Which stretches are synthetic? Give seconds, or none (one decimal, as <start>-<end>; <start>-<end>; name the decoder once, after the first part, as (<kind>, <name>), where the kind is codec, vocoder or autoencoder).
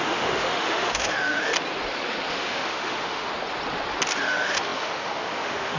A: 0.0-1.5 (autoencoder, DAC-VAE); 2.3-3.3; 4.2-5.8